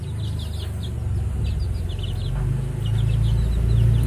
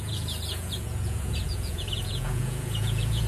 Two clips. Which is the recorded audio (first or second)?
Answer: first